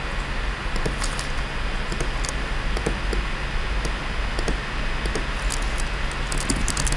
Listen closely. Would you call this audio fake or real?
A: real